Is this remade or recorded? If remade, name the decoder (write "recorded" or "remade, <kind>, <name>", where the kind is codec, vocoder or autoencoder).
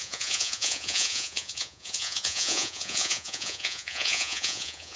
remade, vocoder, Vocos